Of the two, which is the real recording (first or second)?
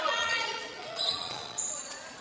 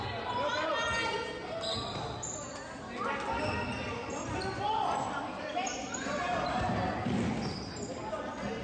second